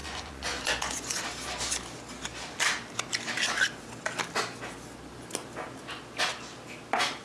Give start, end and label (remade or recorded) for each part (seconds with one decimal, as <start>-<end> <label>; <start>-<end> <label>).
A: 0.0-1.2 remade; 1.2-7.2 recorded